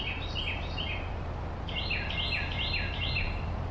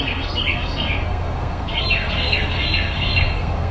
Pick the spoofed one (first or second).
second